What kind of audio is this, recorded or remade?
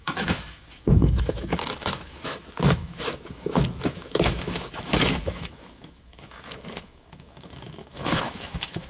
remade